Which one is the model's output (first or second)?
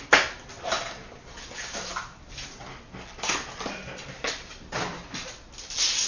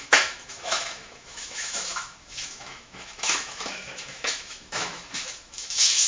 second